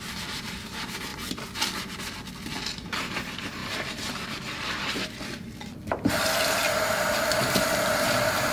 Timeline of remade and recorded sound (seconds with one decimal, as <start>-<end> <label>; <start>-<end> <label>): 0.0-8.5 recorded